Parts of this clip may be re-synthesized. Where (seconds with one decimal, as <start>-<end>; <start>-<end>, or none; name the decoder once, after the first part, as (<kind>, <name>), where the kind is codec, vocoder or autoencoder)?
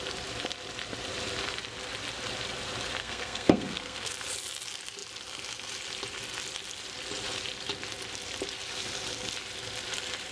3.0-4.1 (codec, SNAC)